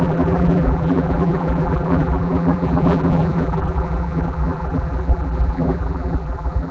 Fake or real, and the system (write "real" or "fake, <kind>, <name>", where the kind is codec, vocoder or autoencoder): fake, vocoder, BigVGAN v2